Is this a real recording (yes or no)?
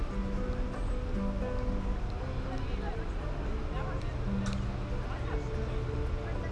yes